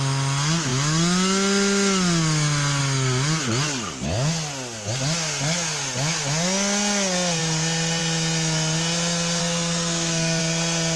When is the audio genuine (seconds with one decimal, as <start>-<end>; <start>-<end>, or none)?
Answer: 0.0-9.4; 10.4-11.0